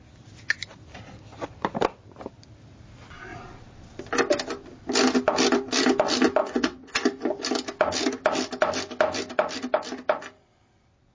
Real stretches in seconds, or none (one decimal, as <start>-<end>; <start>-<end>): 0.0-6.4; 7.0-11.1

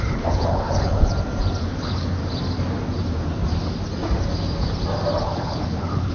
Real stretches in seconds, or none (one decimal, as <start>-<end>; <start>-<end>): 1.1-1.6; 2.2-5.2